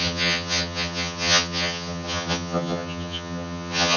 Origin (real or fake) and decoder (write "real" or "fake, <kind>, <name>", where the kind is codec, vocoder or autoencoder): fake, vocoder, HiFi-GAN